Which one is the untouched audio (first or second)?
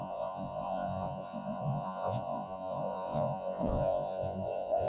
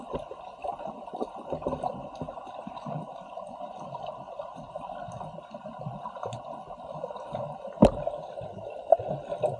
second